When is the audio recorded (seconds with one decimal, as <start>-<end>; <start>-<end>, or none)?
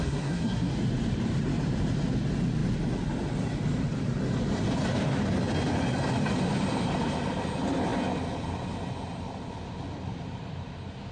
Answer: 0.7-11.1